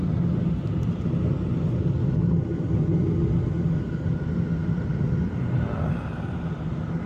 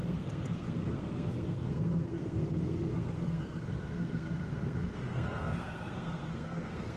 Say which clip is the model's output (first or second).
second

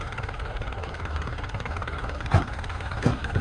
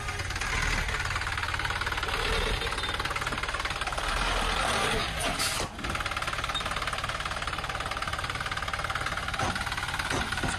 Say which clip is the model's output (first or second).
first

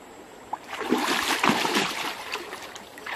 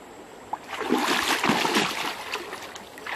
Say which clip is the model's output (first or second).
first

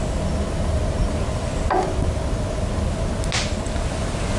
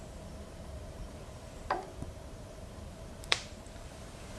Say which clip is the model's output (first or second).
second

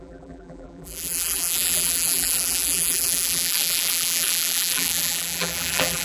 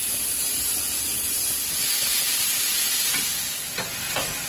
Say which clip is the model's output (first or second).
first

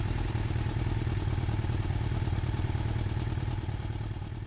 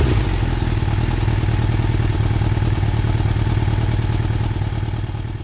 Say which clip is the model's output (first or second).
first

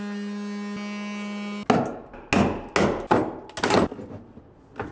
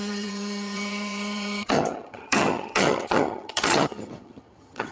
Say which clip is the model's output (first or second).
second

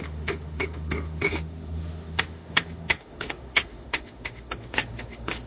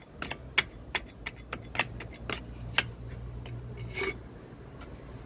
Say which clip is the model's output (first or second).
first